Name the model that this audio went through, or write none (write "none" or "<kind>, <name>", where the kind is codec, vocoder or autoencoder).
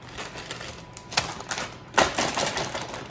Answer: vocoder, BigVGAN v2